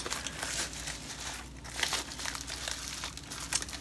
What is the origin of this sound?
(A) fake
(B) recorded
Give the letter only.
B